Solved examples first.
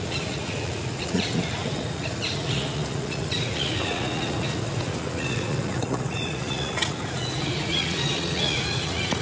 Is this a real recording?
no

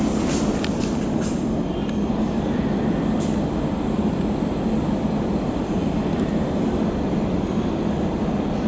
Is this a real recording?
yes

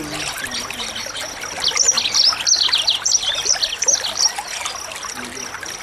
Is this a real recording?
yes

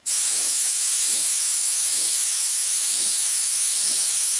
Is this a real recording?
no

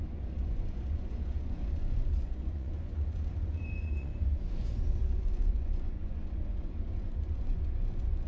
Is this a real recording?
no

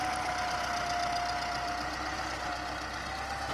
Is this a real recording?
yes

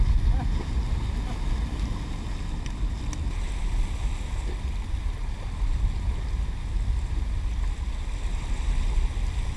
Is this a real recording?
yes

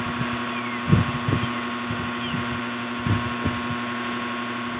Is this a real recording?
yes